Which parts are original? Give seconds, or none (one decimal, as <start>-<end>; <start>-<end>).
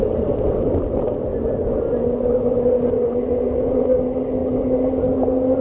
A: 0.0-5.6